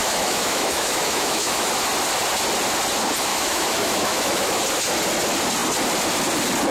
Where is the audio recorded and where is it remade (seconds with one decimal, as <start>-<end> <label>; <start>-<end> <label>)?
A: 0.0-1.7 remade; 1.7-3.3 recorded; 3.3-4.6 remade; 4.6-6.7 recorded